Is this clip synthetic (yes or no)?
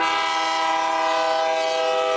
no